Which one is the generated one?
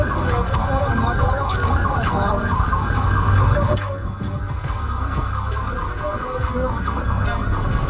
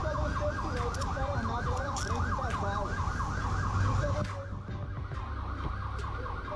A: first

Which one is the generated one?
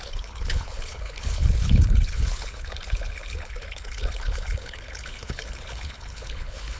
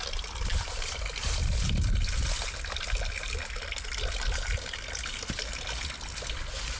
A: first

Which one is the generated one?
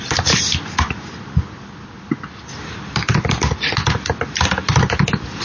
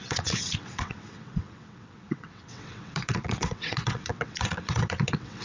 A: second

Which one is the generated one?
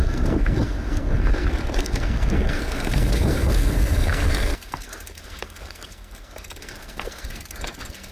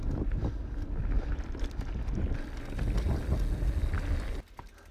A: first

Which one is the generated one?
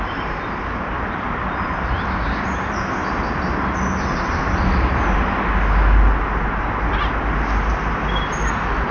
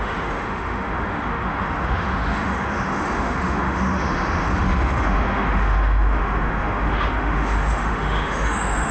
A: second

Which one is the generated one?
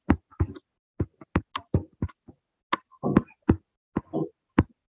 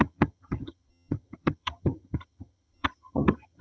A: second